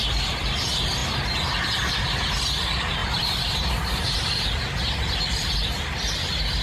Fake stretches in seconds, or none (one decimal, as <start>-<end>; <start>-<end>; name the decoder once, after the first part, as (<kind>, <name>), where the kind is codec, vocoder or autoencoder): 3.0-4.0 (vocoder, BigVGAN v2)